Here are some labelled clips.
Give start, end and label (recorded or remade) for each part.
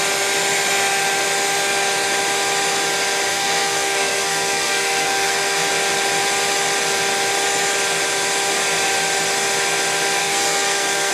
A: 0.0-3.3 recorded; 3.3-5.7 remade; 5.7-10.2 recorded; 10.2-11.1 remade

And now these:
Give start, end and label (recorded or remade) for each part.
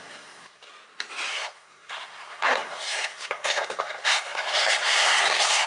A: 0.0-0.7 remade; 0.7-1.3 recorded; 1.3-5.7 remade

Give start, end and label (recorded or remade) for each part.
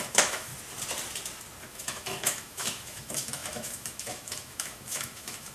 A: 0.0-0.5 remade; 0.5-1.6 recorded; 1.6-5.5 remade